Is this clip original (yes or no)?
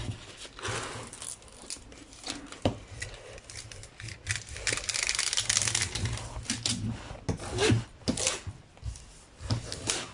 yes